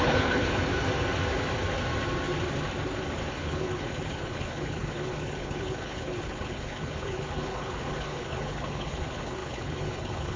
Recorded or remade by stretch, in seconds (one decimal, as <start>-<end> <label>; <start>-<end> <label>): 0.0-0.7 remade; 0.7-3.3 recorded; 3.3-10.4 remade